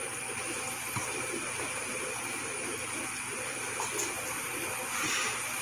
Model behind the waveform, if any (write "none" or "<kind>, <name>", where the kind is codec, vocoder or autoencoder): none